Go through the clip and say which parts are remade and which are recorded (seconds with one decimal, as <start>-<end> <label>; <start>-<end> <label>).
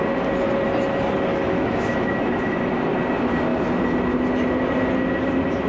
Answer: 0.0-1.3 recorded; 1.3-2.6 remade; 2.6-5.7 recorded